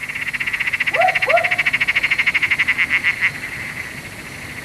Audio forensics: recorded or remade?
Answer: recorded